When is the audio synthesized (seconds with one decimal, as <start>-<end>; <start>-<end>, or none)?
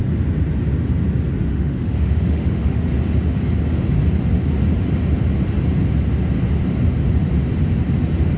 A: 1.5-2.9